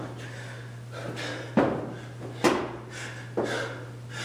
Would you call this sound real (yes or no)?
yes